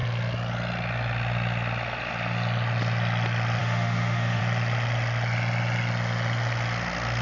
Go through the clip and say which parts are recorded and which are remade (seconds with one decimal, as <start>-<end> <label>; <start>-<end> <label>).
0.0-3.6 recorded; 3.6-4.4 remade; 4.4-7.2 recorded